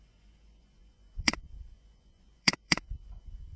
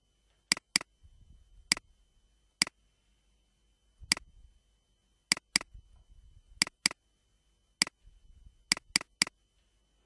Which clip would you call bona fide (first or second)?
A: second